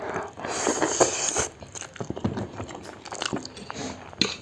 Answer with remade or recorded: recorded